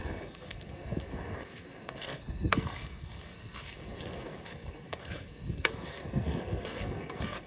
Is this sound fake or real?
fake